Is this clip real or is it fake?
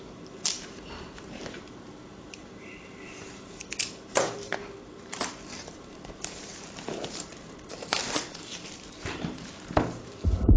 fake